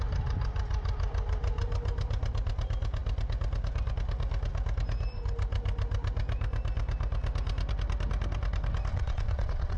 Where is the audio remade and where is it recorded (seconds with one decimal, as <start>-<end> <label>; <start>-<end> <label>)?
0.0-8.9 recorded; 8.9-9.8 remade